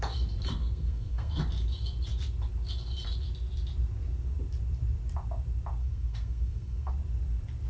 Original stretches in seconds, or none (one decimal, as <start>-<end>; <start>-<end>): 0.0-0.6; 1.4-5.8; 6.9-7.7